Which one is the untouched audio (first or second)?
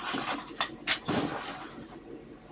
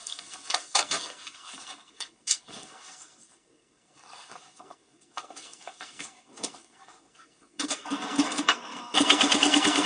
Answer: first